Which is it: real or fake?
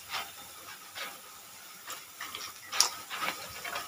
real